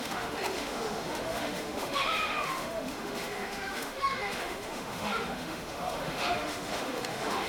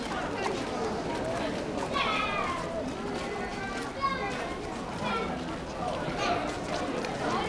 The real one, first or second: second